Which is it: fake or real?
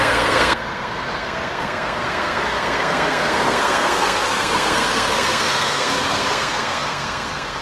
fake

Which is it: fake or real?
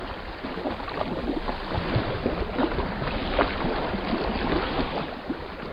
real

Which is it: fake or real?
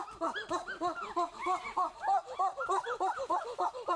real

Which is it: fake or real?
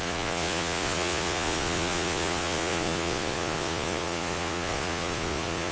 fake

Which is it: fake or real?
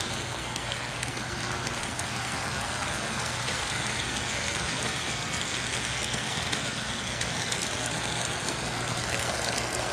fake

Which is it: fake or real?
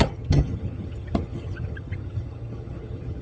fake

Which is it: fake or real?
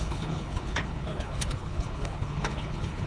fake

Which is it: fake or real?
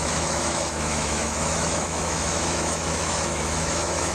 fake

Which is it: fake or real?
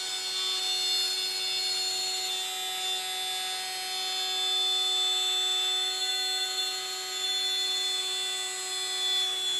real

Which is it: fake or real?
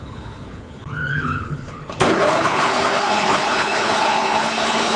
fake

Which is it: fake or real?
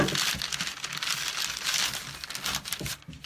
real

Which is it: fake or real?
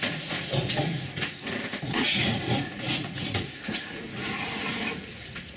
fake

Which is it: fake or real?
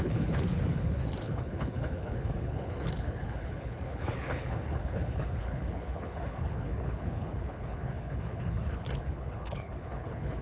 fake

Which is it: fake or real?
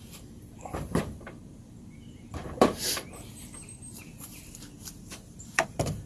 fake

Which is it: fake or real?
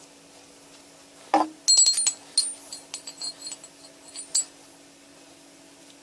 real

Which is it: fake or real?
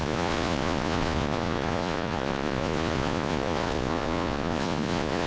fake